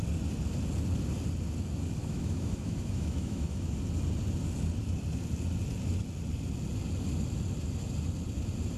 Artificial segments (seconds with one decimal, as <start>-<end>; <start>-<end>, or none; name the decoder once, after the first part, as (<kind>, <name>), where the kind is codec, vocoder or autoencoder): 2.0-3.8 (autoencoder, DAC-VAE)